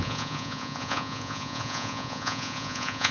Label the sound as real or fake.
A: fake